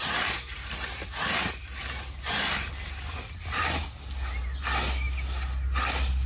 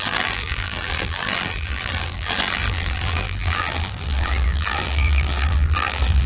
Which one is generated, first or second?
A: second